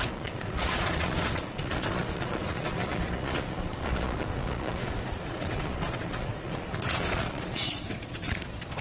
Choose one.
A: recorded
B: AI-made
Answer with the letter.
B